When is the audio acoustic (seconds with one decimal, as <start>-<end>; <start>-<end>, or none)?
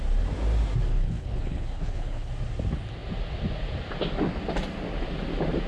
0.0-0.9; 2.3-5.7